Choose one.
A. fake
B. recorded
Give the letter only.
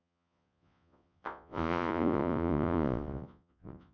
A